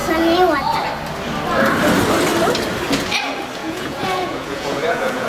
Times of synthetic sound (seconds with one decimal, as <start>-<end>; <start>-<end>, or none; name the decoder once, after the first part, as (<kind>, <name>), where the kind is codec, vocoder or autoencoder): 3.6-5.3 (vocoder, Vocos)